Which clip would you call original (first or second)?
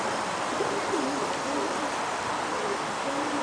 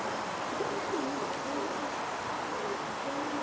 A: second